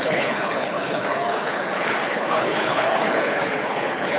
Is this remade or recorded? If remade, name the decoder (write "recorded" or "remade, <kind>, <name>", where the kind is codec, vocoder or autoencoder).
remade, codec, HILCodec